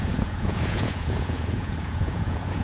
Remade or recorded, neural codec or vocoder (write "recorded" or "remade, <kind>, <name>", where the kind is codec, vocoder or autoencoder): remade, vocoder, Vocos